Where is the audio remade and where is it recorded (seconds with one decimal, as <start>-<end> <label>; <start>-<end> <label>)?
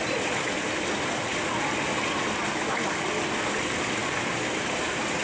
0.0-4.0 recorded; 4.0-5.2 remade